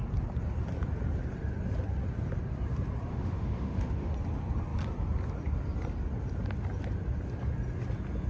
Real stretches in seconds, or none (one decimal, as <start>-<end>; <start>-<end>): 0.0-3.1; 4.1-8.3